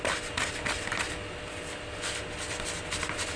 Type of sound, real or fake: real